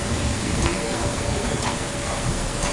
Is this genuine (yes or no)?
no